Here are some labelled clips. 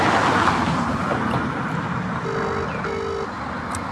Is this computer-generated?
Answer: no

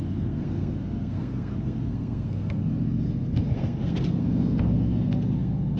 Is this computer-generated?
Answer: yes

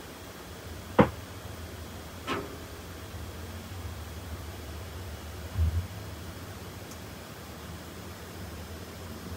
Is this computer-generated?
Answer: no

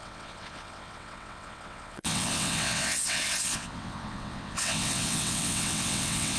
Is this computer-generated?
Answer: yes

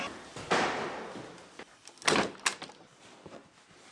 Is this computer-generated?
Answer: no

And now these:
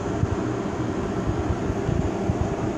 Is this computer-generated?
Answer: no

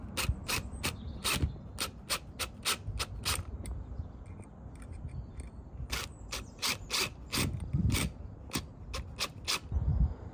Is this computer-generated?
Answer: no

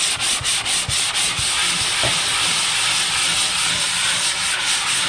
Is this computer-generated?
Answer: no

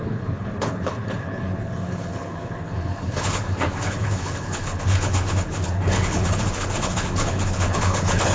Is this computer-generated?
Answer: yes